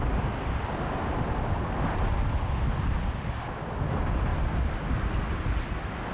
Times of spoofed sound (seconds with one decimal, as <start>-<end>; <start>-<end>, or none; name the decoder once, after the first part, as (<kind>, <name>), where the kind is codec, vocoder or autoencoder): none